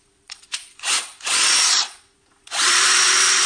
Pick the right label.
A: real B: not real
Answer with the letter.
B